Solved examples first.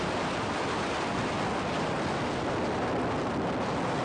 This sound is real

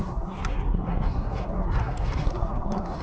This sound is fake